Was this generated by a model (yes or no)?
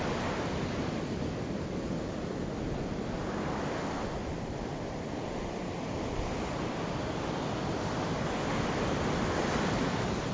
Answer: no